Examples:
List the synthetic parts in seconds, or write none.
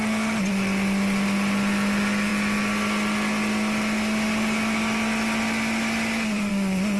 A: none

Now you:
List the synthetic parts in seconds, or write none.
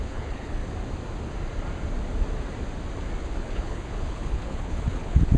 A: 0.0-0.6 (codec, HILCodec); 3.2-5.4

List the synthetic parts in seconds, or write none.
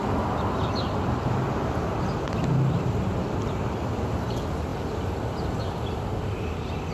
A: none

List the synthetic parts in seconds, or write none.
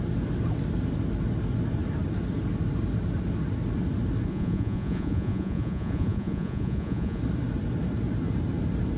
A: 4.3-7.2 (vocoder, Vocos)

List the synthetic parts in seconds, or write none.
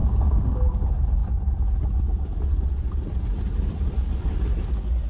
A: 0.0-0.7 (codec, DAC)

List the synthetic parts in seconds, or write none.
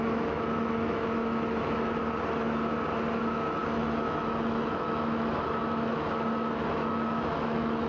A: 0.0-2.0 (autoencoder, DAC-VAE); 3.2-7.9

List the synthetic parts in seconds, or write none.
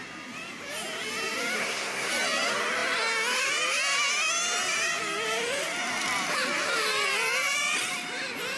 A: 1.6-2.1 (codec, SNAC)